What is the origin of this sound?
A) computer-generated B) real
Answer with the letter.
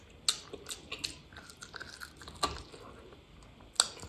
B